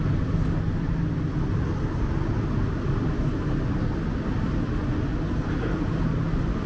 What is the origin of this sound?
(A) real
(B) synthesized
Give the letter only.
A